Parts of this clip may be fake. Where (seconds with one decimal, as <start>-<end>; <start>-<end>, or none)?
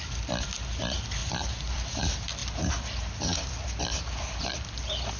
1.2-2.0; 2.4-4.5